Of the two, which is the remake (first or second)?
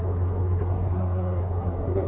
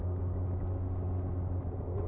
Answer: first